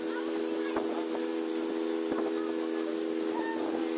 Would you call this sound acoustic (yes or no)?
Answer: yes